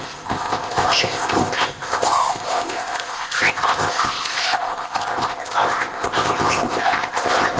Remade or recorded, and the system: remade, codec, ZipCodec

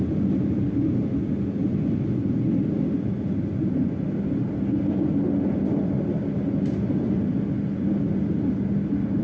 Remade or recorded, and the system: recorded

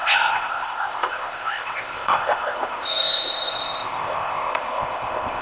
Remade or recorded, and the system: remade, codec, ZipCodec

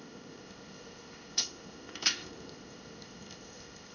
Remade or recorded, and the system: remade, codec, ZipCodec